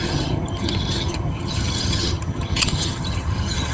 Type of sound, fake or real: fake